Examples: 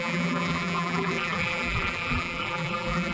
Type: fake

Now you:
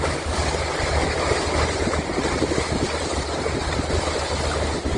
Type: fake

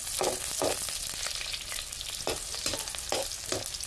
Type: real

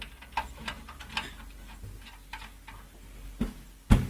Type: real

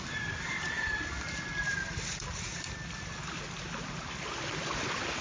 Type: real